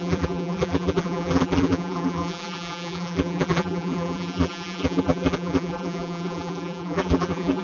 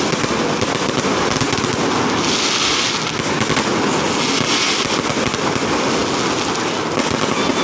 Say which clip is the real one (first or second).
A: second